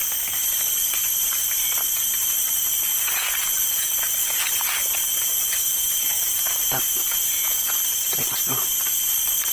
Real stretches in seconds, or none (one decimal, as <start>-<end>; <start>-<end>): 0.0-2.9; 7.7-9.5